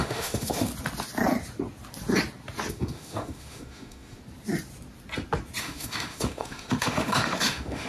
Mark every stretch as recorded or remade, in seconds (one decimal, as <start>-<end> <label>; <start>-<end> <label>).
0.0-0.7 remade; 0.7-2.7 recorded; 2.7-4.2 remade; 4.2-5.6 recorded; 5.6-7.9 remade